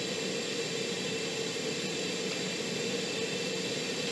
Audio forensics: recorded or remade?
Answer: recorded